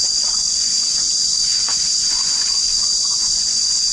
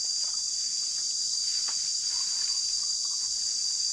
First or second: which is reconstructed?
first